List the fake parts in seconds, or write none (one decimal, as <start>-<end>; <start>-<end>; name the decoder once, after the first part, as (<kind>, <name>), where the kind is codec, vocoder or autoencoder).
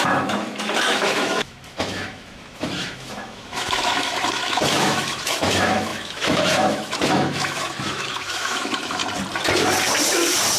0.0-9.0 (autoencoder, DAC-VAE)